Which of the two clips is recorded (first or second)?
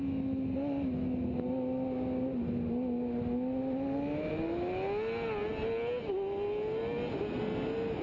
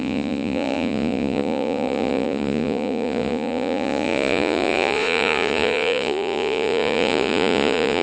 first